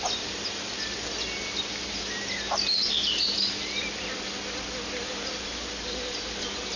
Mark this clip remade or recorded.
recorded